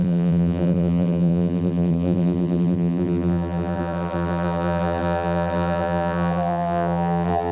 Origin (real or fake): fake